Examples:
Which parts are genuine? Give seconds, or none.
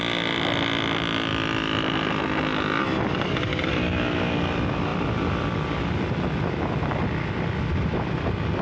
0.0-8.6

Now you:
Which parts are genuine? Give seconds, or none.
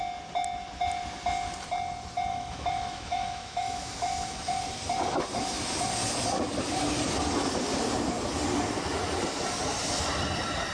0.0-2.3; 4.6-10.7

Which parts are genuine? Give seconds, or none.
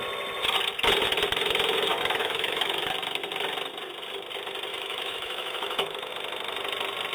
0.0-1.9; 2.9-4.7; 6.1-7.1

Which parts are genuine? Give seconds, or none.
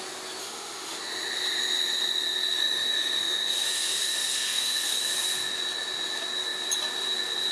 0.0-0.4; 1.0-2.6; 5.1-7.5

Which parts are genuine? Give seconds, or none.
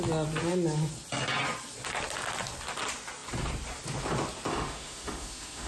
0.0-4.5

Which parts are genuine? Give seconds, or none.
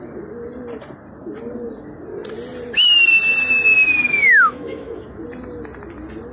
0.0-3.7; 5.2-6.3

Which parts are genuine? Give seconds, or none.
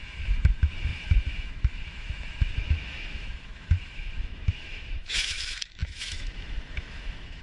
none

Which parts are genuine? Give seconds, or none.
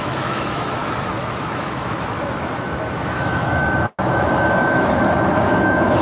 0.8-1.4